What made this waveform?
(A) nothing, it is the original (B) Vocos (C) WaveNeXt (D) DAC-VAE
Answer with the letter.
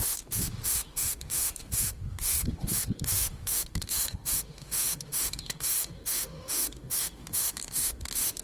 D